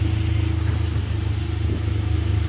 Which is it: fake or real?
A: real